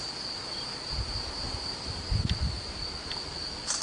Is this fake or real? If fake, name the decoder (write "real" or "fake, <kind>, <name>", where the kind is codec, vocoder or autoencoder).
real